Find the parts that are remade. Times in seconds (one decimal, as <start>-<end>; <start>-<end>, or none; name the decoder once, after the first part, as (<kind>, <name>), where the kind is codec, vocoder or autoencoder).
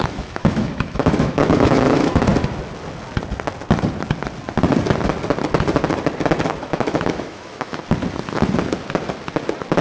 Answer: 0.0-2.3 (autoencoder, DAC-VAE); 6.6-7.8